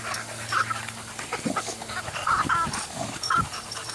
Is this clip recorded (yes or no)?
no